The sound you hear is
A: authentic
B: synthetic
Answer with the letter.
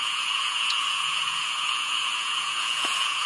B